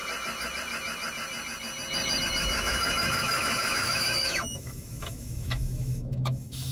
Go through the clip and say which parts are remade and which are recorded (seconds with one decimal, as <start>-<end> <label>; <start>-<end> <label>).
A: 0.0-2.2 recorded; 2.2-6.7 remade